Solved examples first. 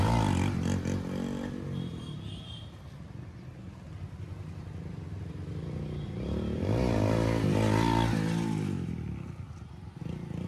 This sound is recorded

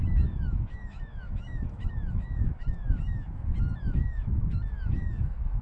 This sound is remade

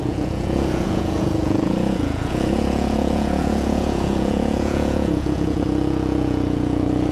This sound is remade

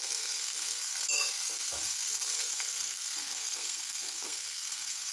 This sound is remade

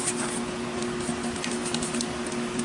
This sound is recorded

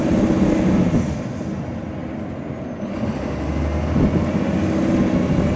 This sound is recorded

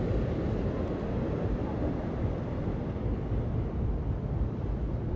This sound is recorded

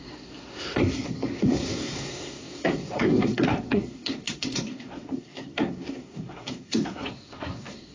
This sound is remade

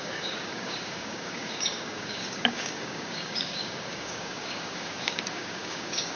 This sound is remade